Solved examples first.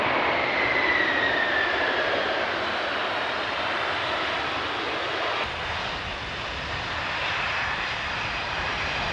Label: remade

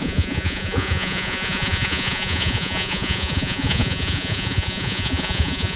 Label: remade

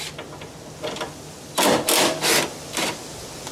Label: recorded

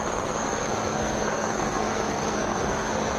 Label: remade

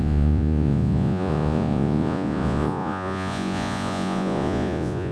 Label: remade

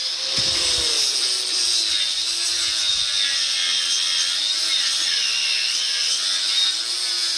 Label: recorded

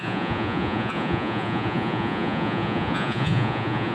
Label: remade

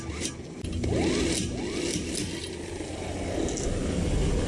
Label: recorded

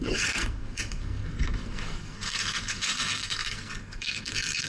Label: remade